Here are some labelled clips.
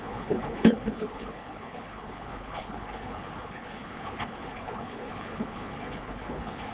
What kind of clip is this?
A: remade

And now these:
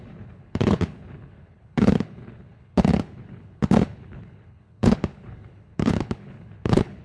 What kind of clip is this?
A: remade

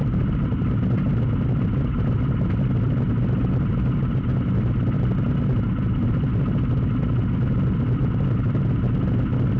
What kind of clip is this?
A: recorded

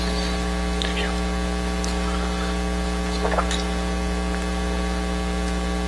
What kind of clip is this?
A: recorded